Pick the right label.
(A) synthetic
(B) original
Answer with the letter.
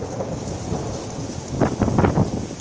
B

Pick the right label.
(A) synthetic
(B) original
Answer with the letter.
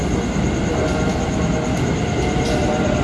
B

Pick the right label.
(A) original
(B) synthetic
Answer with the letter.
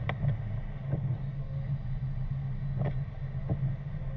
A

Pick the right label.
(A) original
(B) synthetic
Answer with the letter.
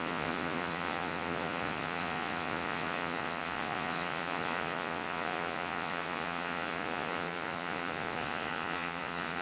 B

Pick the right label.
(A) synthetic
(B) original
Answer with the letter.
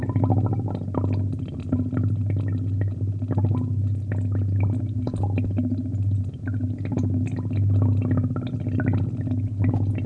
B